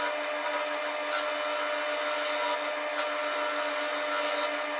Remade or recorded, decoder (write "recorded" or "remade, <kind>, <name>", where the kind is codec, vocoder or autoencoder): recorded